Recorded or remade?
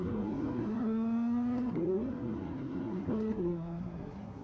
remade